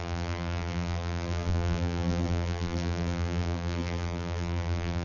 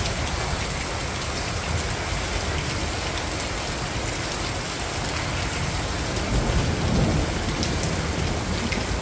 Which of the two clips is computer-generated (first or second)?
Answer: first